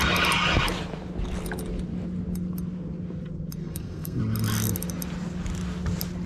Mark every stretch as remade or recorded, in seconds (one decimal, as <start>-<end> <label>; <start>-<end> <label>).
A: 0.0-3.6 recorded; 3.6-4.2 remade; 4.2-6.3 recorded